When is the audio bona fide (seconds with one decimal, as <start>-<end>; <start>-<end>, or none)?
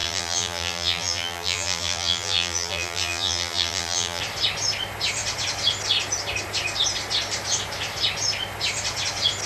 4.2-9.5